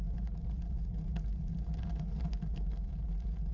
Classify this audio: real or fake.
real